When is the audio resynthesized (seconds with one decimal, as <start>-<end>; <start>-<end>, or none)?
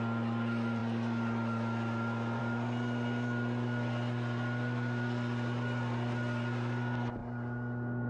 none